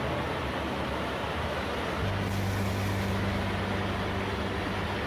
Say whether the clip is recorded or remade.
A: recorded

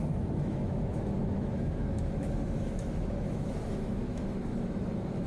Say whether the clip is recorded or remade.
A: remade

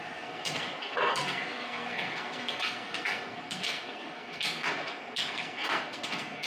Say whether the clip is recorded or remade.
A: remade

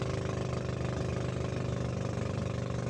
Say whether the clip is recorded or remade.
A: recorded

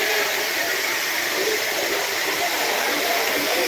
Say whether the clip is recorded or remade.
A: recorded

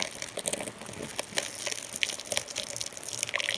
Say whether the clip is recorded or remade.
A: recorded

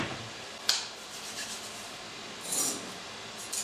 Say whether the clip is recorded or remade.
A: recorded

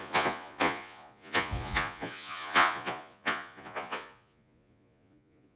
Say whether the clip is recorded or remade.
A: remade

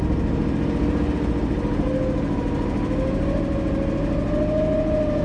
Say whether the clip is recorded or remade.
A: recorded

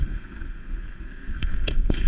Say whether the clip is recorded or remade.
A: remade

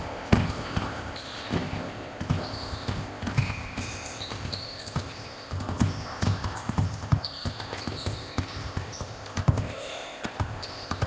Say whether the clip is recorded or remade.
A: remade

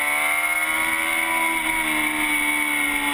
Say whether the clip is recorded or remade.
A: recorded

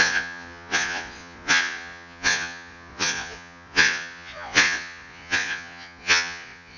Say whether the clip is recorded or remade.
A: remade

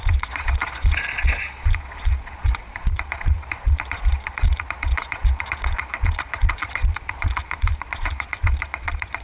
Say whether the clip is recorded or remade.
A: remade